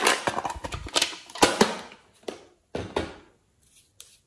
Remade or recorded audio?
recorded